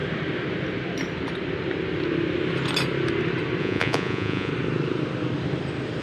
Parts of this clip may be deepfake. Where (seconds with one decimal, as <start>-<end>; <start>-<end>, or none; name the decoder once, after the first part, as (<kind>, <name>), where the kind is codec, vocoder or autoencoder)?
3.6-4.5 (vocoder, Vocos)